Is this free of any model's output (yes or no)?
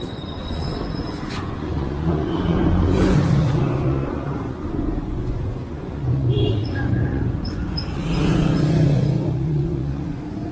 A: no